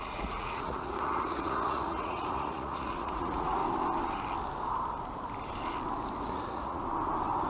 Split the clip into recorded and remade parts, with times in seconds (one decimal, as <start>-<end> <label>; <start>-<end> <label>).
0.0-3.6 remade; 3.6-6.3 recorded; 6.3-6.8 remade; 6.8-7.5 recorded